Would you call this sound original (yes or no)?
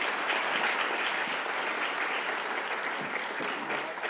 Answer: yes